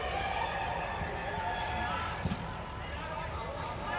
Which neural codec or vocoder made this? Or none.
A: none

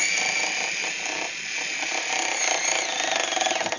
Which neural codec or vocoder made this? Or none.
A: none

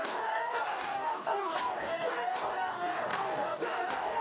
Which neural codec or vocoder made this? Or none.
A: codec, DAC